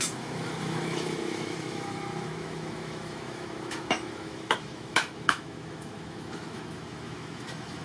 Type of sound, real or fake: fake